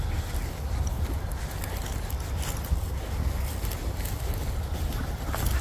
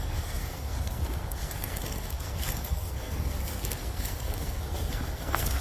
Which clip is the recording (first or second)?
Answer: first